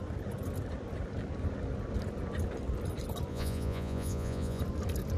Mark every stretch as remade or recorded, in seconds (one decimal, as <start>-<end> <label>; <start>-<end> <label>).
0.0-3.3 recorded; 3.3-4.6 remade; 4.6-5.2 recorded